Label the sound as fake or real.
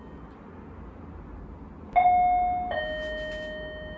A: real